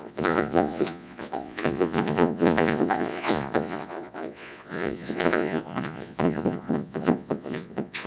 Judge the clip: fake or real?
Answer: fake